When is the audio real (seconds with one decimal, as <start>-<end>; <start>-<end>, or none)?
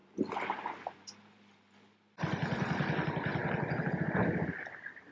0.0-5.1